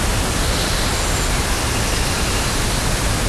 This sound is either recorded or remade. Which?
recorded